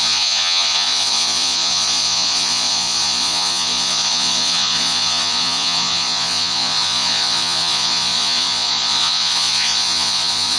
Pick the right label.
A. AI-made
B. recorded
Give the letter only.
A